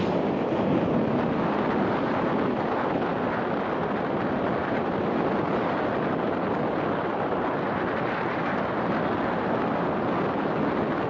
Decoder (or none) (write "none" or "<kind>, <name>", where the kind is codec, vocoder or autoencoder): none